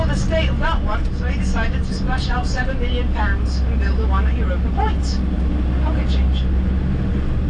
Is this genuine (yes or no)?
yes